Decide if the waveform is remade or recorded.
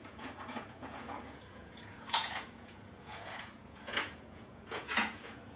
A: remade